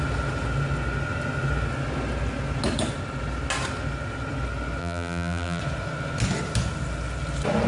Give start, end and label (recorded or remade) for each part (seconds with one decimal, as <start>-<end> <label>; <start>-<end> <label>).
0.0-4.8 recorded; 4.8-5.6 remade; 5.6-7.7 recorded